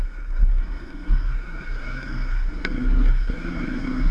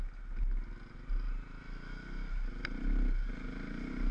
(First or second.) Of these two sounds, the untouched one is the second